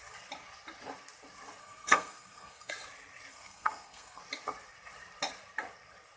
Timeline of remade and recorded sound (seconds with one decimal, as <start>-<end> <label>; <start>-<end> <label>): 0.0-1.6 recorded; 1.6-2.7 remade; 2.7-3.3 recorded; 3.3-4.2 remade; 4.2-6.2 recorded

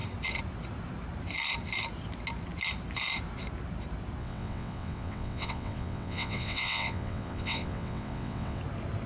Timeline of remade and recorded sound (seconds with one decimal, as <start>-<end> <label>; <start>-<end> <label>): 0.0-4.2 recorded; 4.2-8.6 remade; 8.6-9.1 recorded

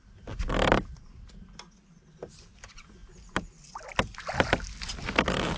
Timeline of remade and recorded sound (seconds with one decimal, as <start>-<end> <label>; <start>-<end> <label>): 0.0-5.6 recorded

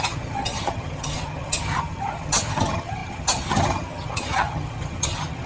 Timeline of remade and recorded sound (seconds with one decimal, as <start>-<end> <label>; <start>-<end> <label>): 0.0-5.5 remade

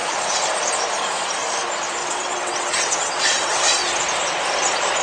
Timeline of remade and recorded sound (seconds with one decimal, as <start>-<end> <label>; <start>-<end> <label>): 0.0-2.0 recorded; 2.0-3.9 remade; 3.9-5.0 recorded